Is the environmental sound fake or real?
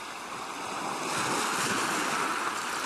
real